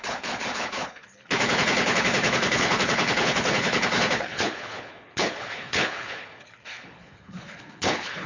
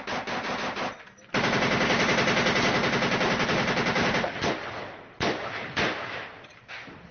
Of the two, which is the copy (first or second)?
first